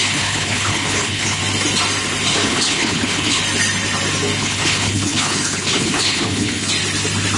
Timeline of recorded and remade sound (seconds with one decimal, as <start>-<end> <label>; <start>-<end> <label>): 0.0-1.4 remade; 1.4-2.3 recorded; 2.3-3.4 remade; 3.4-4.4 recorded; 4.4-6.7 remade; 6.7-7.4 recorded